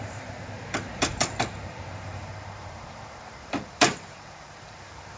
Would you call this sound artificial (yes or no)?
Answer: yes